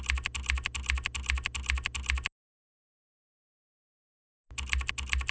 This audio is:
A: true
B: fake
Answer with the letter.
A